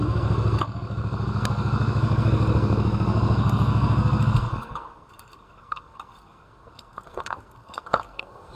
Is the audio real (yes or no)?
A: no